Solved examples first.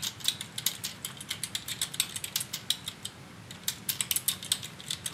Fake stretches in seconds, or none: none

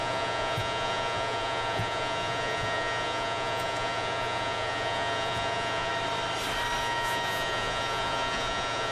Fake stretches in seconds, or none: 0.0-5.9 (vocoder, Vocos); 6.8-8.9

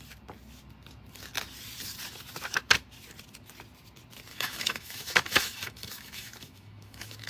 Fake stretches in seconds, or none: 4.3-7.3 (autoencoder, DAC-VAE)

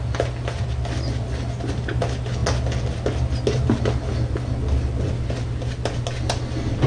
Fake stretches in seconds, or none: none

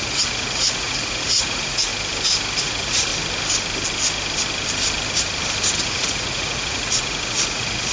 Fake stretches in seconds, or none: 0.0-1.9 (vocoder, Vocos); 2.6-3.1; 5.8-7.9

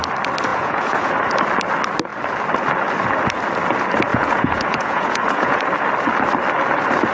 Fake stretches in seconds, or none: 0.5-1.1 (vocoder, Vocos); 4.1-5.6